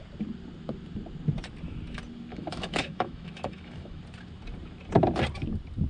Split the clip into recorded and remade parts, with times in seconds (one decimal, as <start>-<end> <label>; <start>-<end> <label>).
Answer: 0.0-2.3 recorded; 2.3-4.0 remade; 4.0-5.9 recorded